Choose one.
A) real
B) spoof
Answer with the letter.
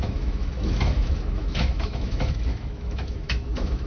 B